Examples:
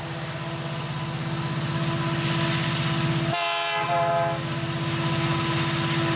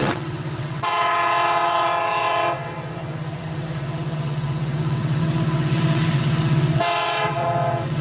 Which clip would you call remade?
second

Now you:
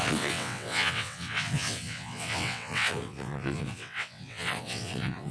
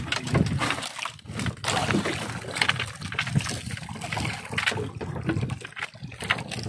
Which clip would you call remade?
first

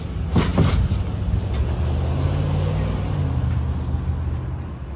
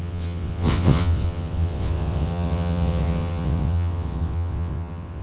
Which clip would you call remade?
second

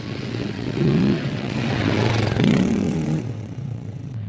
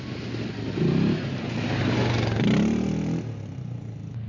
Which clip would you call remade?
first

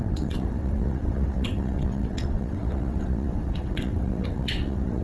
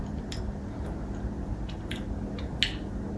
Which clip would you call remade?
first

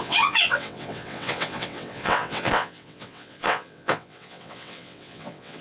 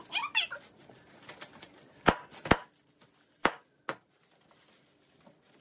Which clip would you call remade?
first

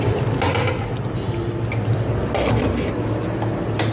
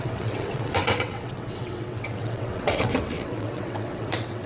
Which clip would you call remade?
second